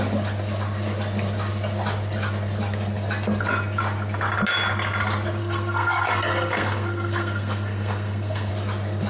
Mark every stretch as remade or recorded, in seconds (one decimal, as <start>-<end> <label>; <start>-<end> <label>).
0.0-5.4 recorded; 5.4-8.5 remade; 8.5-9.1 recorded

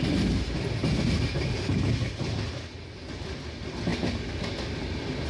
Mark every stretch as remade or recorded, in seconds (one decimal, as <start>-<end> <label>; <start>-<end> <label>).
0.0-0.8 recorded; 0.8-1.9 remade; 1.9-5.3 recorded

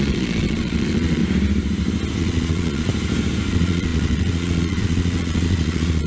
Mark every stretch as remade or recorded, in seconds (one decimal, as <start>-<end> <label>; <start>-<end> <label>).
0.0-1.2 remade; 1.2-2.2 recorded; 2.2-2.9 remade; 2.9-3.5 recorded; 3.5-6.1 remade

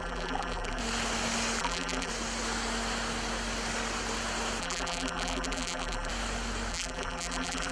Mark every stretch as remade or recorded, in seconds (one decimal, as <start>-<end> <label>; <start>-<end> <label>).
0.0-0.8 remade; 0.8-1.6 recorded; 1.6-2.1 remade; 2.1-4.6 recorded; 4.6-6.1 remade; 6.1-6.7 recorded; 6.7-7.7 remade

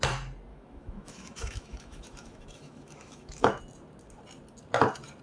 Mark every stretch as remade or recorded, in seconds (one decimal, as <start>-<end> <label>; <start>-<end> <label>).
0.0-0.5 recorded; 0.5-3.6 remade; 3.6-5.2 recorded

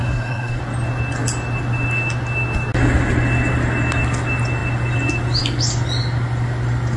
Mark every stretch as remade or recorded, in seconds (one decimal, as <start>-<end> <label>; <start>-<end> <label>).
0.0-0.6 remade; 0.6-7.0 recorded

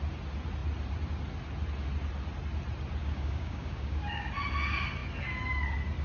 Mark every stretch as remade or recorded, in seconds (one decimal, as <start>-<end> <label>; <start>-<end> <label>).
0.0-3.0 recorded; 3.0-4.3 remade; 4.3-6.0 recorded

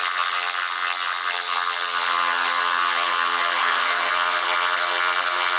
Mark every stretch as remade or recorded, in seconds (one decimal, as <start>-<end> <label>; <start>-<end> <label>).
0.0-3.6 recorded; 3.6-4.1 remade; 4.1-5.6 recorded